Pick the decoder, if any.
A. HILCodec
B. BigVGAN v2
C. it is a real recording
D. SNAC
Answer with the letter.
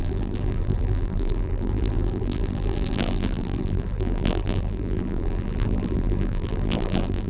B